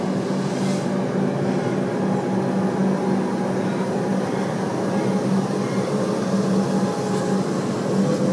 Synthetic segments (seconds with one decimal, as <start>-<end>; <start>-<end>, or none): none